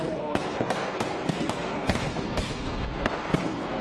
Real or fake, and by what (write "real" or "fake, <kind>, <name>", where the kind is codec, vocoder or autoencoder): fake, codec, SNAC